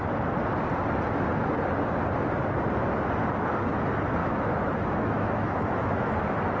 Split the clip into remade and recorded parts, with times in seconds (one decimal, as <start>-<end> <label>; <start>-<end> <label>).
0.0-4.2 recorded; 4.2-6.1 remade; 6.1-6.6 recorded